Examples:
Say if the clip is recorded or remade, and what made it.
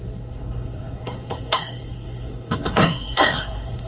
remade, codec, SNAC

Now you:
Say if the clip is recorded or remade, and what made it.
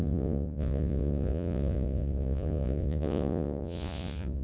remade, vocoder, Vocos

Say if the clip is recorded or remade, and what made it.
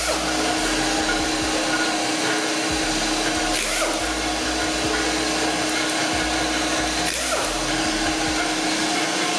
recorded